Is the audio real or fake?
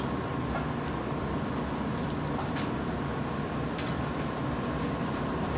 real